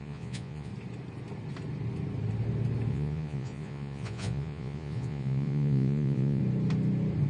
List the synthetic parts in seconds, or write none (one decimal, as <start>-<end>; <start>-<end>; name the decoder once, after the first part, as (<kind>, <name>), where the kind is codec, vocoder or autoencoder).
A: 0.0-0.7 (vocoder, Vocos); 2.9-6.4